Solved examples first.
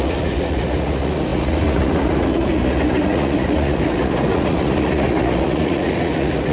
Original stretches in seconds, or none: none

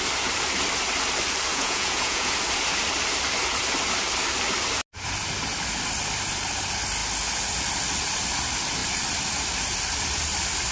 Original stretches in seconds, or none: 0.0-1.5; 2.3-10.7

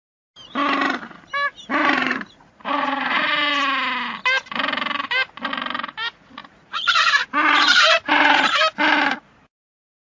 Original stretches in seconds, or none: 0.0-1.8; 3.6-6.4; 8.6-10.1